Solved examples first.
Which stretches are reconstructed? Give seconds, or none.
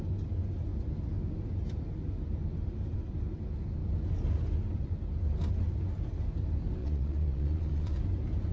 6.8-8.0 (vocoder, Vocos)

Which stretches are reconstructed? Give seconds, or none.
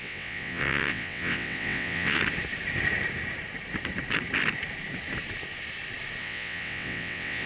0.0-2.2 (vocoder, WaveNeXt); 6.2-7.5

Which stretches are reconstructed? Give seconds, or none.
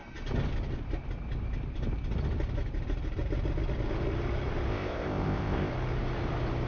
4.7-5.7 (codec, ZipCodec)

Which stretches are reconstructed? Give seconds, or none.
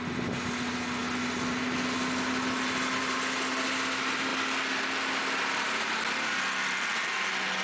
none